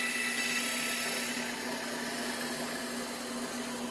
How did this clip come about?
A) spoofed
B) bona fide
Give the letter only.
B